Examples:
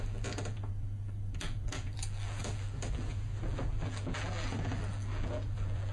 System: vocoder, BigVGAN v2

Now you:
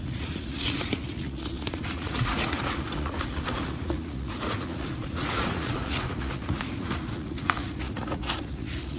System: vocoder, Vocos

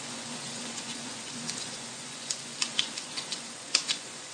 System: vocoder, Vocos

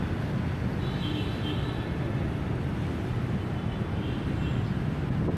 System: none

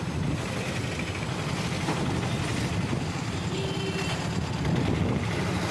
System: none